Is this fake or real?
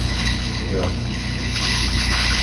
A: fake